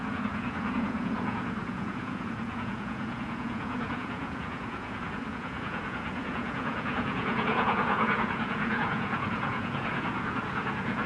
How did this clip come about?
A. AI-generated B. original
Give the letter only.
A